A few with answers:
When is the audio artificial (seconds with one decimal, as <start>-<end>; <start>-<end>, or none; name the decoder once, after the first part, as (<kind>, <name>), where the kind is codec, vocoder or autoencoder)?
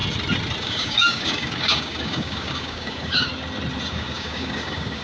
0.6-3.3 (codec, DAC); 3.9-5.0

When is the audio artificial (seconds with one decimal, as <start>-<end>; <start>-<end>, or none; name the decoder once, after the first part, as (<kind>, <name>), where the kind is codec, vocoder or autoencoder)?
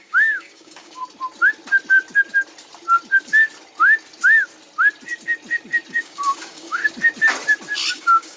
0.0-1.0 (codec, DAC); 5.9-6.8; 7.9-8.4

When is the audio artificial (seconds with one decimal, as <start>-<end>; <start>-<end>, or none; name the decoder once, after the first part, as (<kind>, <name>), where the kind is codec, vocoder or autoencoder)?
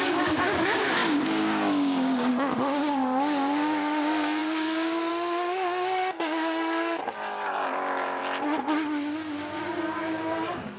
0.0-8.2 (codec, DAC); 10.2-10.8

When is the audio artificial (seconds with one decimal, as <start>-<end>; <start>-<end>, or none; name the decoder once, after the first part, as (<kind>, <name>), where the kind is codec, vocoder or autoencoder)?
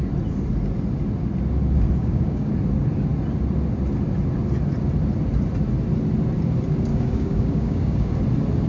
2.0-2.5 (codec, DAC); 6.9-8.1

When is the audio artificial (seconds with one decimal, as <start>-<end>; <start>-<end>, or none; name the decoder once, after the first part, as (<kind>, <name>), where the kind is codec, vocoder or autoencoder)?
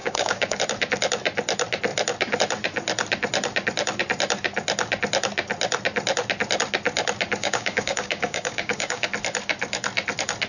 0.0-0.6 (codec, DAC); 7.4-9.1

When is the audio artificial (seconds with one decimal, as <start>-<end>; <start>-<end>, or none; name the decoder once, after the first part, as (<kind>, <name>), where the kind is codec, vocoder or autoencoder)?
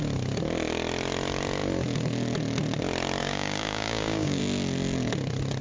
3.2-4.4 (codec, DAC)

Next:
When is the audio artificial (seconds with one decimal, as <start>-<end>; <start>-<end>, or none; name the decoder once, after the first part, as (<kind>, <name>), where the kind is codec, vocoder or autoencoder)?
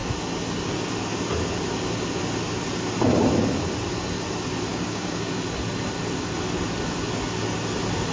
4.7-5.3 (codec, DAC)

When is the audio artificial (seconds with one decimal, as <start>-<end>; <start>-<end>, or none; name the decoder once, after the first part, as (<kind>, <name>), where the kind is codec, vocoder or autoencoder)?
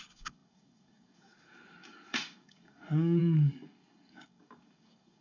0.0-5.2 (codec, DAC)